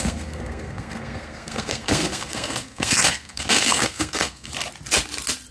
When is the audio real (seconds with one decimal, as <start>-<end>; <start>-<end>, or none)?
4.5-5.5